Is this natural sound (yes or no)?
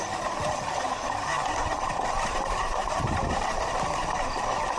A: no